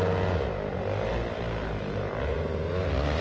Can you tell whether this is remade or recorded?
recorded